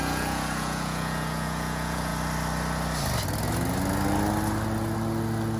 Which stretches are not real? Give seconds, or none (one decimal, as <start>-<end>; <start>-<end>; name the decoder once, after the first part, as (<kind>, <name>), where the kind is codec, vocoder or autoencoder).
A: 0.0-2.1 (vocoder, Vocos)